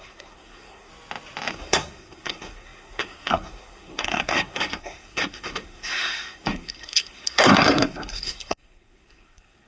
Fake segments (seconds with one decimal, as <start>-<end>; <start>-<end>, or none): 0.0-0.9; 1.5-9.7